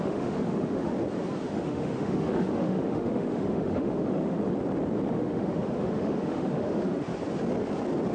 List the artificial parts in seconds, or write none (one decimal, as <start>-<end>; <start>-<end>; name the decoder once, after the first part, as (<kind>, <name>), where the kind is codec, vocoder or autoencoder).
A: 0.0-0.9 (autoencoder, DAC-VAE); 1.4-4.4; 5.1-7.1